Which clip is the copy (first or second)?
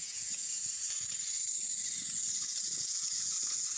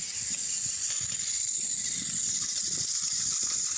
first